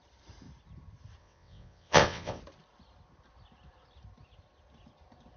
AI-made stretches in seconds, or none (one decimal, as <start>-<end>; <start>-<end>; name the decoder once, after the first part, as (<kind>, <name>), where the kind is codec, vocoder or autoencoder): 1.2-2.4 (vocoder, WaveNeXt)